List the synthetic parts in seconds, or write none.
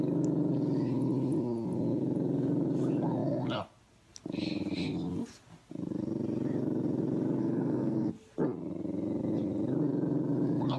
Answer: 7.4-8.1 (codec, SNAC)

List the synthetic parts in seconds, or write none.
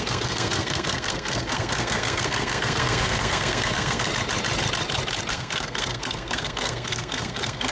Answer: 0.0-4.1 (codec, SNAC); 5.3-7.7